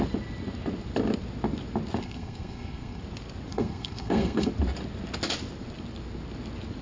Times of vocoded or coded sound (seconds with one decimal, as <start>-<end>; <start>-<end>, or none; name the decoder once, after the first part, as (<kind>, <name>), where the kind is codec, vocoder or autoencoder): 2.0-3.0 (codec, SNAC); 3.5-4.5